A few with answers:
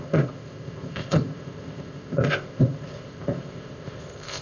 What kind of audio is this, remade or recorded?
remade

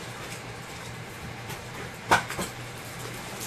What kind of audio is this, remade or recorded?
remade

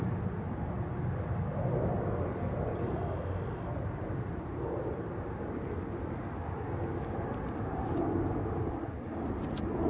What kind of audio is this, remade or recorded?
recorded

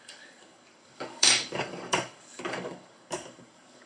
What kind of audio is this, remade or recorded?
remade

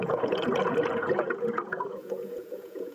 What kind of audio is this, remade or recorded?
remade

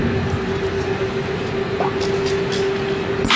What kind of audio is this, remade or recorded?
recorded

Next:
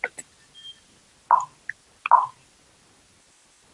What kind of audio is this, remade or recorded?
recorded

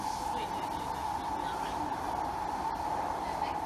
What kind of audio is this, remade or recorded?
recorded